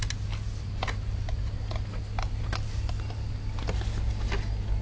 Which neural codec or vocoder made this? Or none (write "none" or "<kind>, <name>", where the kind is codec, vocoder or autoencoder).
none